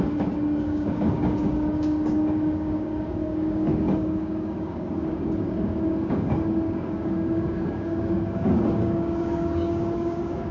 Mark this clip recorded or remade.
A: remade